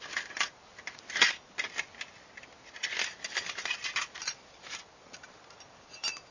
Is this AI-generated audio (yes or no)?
no